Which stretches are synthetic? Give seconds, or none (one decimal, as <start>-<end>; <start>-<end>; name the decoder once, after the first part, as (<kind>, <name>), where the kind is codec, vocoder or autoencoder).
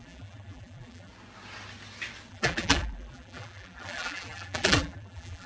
0.0-1.1 (vocoder, BigVGAN v2); 2.3-5.5